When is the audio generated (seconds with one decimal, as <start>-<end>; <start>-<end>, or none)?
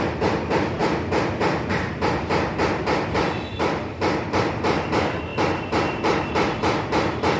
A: 0.0-0.8; 1.5-7.4